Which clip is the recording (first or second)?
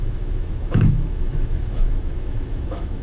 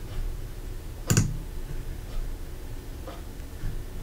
second